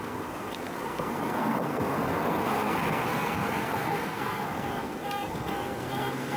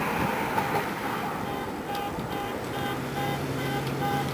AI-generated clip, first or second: first